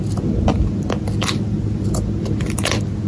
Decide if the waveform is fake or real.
real